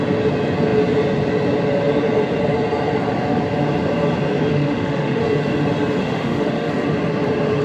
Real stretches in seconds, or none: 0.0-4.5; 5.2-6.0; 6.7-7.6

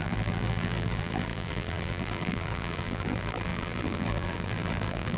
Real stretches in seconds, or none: none

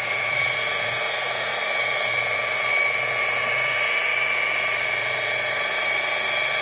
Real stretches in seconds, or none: none